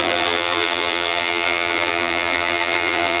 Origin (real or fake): fake